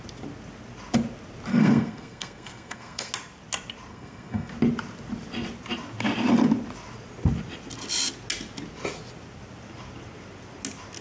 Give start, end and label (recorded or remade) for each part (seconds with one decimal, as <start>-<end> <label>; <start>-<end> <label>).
0.0-1.5 recorded; 1.5-3.1 remade; 3.1-3.9 recorded; 3.9-4.5 remade; 4.5-11.0 recorded